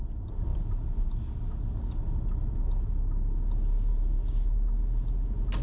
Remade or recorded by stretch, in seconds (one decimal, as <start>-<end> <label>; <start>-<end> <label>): 0.0-5.6 recorded